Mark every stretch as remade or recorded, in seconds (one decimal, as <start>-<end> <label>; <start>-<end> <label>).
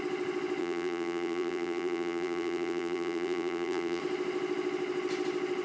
0.0-0.6 recorded; 0.6-4.0 remade; 4.0-5.6 recorded